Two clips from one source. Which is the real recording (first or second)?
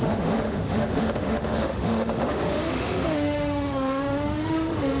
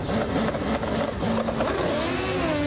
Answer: second